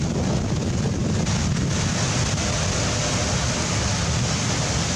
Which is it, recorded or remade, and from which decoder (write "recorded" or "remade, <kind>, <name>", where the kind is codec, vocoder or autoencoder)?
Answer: recorded